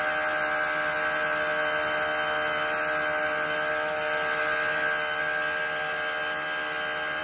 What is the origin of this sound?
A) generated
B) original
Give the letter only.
B